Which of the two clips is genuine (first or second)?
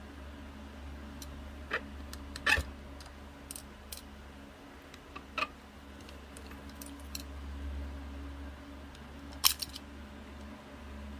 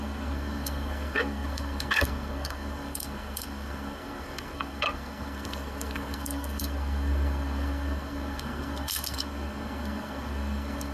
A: first